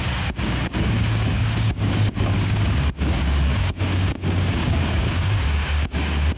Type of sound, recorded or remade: remade